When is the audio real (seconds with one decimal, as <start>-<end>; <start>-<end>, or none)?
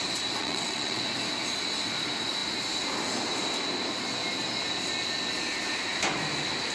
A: 0.0-0.4; 1.0-6.7